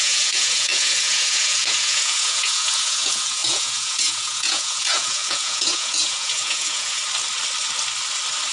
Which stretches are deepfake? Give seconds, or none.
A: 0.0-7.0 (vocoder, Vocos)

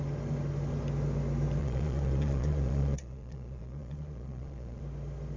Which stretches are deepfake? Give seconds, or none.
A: 1.6-4.8 (vocoder, Vocos)

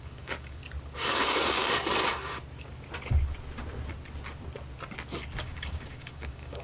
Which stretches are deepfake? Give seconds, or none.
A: 0.0-0.6 (codec, DAC); 1.2-1.6; 5.4-6.6

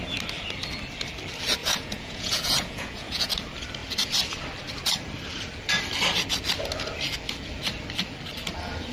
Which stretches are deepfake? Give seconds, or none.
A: 1.6-3.3 (vocoder, Vocos)